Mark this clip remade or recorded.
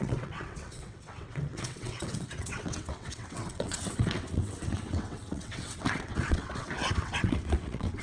remade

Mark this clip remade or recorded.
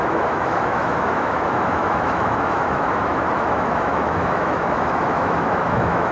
remade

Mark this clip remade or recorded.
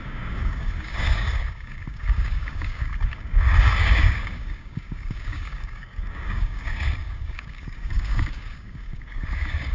remade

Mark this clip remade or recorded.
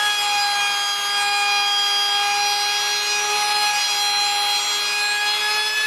recorded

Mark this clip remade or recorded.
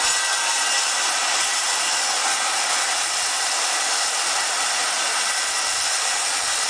recorded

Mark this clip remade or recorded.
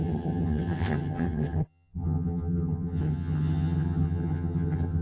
remade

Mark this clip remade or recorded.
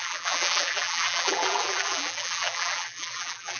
remade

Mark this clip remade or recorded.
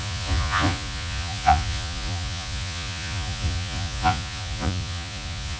remade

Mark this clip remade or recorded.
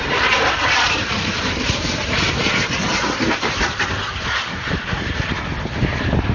remade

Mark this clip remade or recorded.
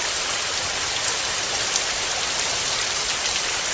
recorded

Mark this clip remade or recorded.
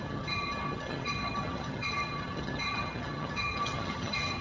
remade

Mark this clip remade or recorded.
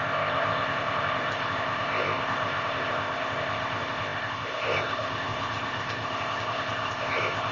remade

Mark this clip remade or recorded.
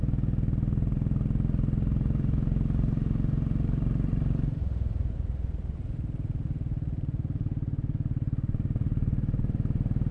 remade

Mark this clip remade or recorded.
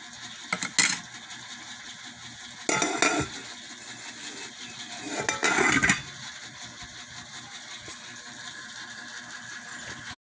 recorded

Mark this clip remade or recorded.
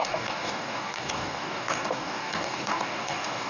remade